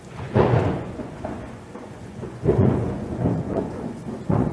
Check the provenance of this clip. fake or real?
fake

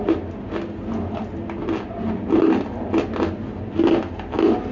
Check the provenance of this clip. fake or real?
real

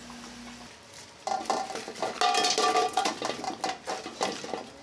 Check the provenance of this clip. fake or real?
real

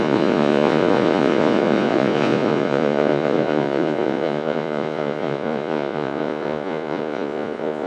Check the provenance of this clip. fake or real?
fake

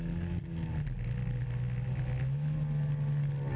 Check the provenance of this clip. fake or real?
real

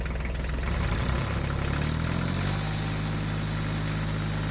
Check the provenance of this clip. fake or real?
real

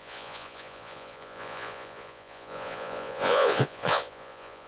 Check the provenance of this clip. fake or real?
fake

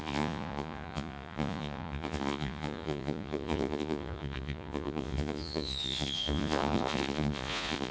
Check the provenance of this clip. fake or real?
fake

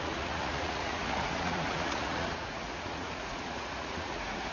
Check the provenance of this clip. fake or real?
fake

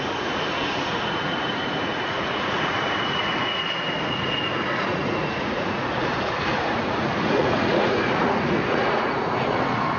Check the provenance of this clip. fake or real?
fake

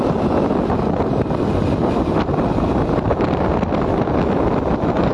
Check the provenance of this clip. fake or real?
real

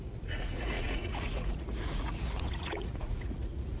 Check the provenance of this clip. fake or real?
fake